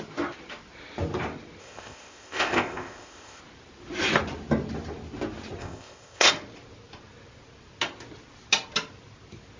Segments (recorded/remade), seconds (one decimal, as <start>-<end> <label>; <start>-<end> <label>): 0.0-1.6 recorded; 1.6-3.4 remade; 3.4-5.6 recorded; 5.6-6.3 remade; 6.3-9.6 recorded